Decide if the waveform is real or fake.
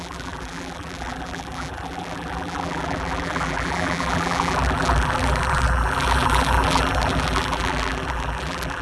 fake